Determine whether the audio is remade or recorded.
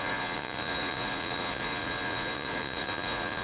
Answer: remade